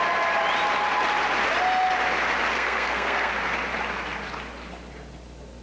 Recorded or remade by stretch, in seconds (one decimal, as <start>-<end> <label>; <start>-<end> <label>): 0.0-2.5 recorded; 2.5-3.3 remade; 3.3-5.6 recorded

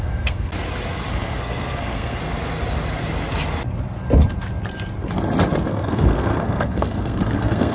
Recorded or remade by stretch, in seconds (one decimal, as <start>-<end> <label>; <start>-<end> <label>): 0.0-0.5 remade; 0.5-1.1 recorded; 1.1-2.2 remade; 2.2-5.7 recorded; 5.7-7.7 remade

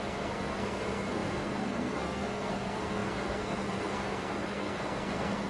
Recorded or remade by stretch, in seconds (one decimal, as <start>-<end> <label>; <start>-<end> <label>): 0.0-5.5 remade

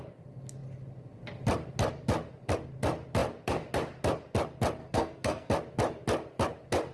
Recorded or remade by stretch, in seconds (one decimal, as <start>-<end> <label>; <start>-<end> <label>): 0.0-4.8 recorded; 4.8-5.5 remade; 5.5-6.9 recorded

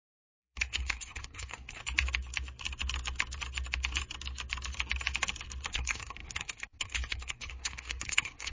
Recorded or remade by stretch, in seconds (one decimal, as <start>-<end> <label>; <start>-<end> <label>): 0.0-1.8 remade; 1.8-5.7 recorded; 5.7-8.5 remade

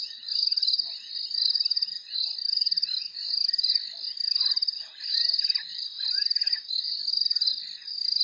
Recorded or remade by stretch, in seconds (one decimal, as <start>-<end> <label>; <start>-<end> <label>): 0.0-8.2 recorded